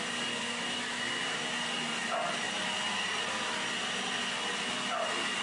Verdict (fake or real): real